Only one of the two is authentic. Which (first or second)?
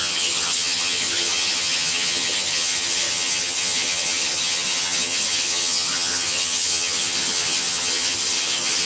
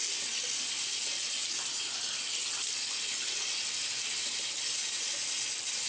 second